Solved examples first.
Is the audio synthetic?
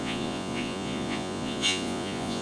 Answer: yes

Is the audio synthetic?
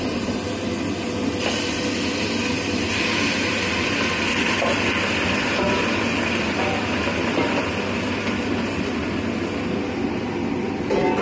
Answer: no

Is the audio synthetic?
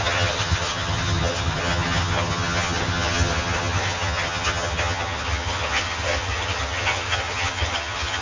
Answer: yes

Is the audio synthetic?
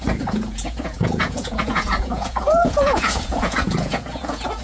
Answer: yes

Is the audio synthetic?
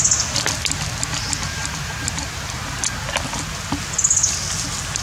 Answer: no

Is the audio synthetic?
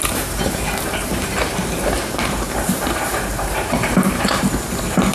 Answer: yes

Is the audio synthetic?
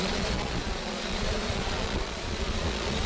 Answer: yes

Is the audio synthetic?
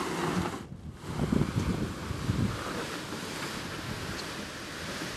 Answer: no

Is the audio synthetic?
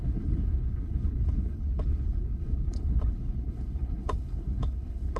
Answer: yes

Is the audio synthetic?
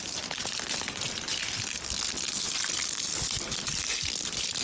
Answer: no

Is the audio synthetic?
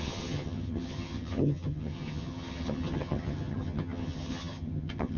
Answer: yes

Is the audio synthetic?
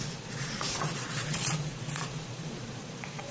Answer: yes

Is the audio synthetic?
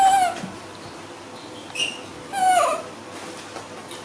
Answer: no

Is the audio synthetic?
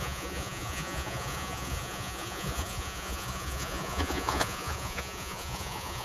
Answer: yes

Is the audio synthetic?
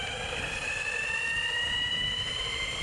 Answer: no